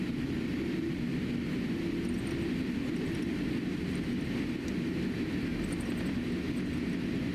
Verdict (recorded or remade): recorded